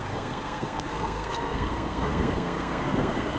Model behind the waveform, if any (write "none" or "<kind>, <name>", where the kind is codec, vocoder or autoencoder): codec, SNAC